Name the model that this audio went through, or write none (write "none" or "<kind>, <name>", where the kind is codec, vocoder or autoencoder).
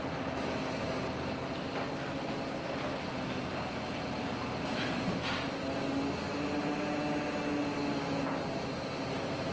none